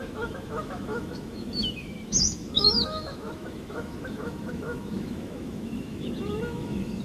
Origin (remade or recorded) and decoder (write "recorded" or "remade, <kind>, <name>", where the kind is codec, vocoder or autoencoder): remade, autoencoder, DAC-VAE